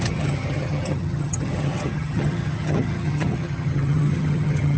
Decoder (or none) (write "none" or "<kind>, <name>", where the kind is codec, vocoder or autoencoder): vocoder, HiFi-GAN